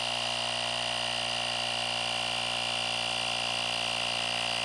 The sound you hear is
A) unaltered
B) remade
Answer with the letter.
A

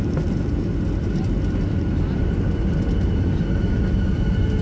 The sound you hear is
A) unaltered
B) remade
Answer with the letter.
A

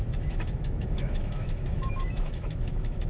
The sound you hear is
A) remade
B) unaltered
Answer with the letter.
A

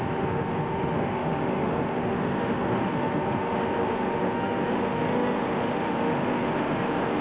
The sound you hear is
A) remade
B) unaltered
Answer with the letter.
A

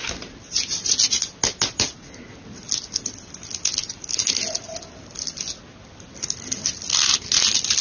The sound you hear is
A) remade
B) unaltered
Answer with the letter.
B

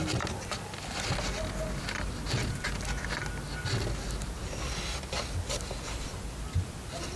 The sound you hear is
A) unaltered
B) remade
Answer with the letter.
A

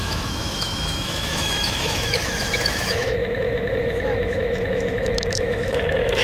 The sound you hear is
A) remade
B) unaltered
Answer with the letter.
A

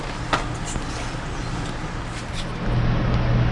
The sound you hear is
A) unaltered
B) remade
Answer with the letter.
A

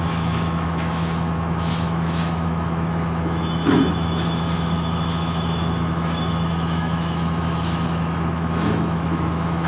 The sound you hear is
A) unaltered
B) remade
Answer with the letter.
B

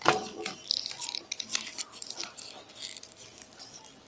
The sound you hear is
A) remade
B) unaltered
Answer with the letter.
B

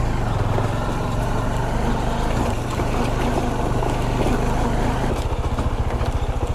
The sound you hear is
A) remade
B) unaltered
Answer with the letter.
B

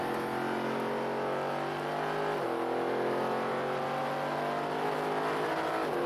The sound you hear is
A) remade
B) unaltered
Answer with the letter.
B